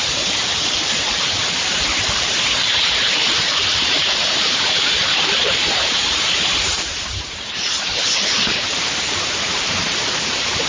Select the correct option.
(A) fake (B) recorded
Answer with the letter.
A